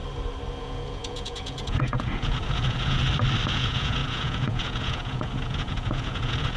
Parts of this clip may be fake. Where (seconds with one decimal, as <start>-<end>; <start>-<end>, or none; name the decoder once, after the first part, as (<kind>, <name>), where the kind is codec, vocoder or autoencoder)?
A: 0.6-3.0 (vocoder, Vocos); 3.5-6.6

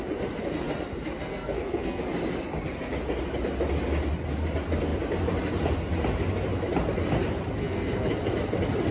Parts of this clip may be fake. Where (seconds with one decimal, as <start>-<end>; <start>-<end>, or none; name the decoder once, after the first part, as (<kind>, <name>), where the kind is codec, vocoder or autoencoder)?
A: 1.3-2.0 (codec, SNAC); 7.6-8.1